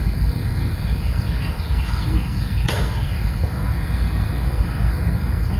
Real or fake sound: fake